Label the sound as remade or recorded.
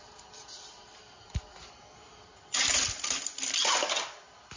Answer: recorded